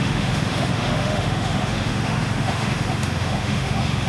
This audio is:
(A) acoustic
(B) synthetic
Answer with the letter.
B